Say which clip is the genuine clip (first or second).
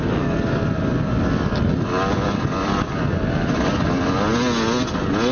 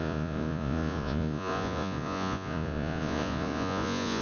first